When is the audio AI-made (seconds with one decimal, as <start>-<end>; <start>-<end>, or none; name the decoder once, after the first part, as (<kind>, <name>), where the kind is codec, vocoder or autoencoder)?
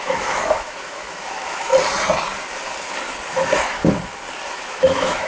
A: 0.0-1.7 (autoencoder, DAC-VAE); 3.3-3.8; 4.5-5.3